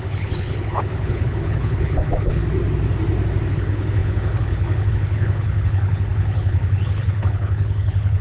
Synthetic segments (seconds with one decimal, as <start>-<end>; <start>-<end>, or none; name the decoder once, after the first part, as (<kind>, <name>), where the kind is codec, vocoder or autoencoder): 0.0-2.4 (codec, HILCodec); 3.5-8.2